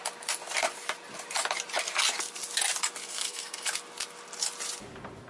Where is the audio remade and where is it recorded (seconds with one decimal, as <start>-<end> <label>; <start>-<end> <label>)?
0.0-3.0 recorded; 3.0-3.7 remade; 3.7-5.3 recorded